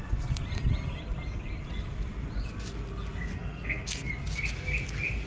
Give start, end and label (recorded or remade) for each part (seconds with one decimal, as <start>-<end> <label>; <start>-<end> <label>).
0.0-3.3 recorded; 3.3-4.1 remade; 4.1-5.3 recorded